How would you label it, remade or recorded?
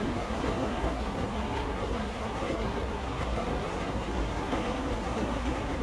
remade